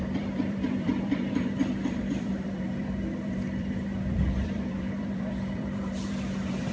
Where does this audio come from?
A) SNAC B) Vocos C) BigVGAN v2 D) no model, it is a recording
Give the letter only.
C